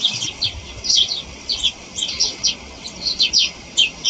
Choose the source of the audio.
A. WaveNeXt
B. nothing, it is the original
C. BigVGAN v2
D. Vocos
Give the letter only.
A